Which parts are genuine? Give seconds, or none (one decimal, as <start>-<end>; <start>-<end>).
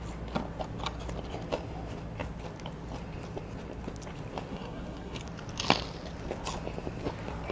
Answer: 0.0-4.5; 5.2-7.5